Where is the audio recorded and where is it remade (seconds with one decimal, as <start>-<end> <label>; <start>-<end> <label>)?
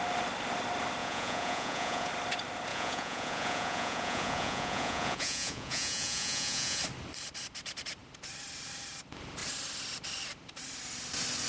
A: 0.0-1.0 recorded; 1.0-2.1 remade; 2.1-2.7 recorded; 2.7-6.8 remade; 6.8-11.5 recorded